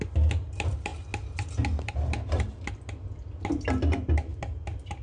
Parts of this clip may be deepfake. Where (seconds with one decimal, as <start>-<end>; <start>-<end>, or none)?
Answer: none